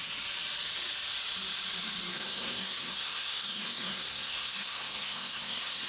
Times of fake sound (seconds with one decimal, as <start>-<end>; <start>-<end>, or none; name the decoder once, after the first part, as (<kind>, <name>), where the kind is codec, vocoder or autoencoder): 2.1-5.9 (codec, SNAC)